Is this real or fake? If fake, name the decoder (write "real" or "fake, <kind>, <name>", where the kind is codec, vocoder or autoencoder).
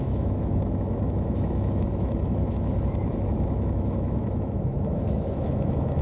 fake, autoencoder, DAC-VAE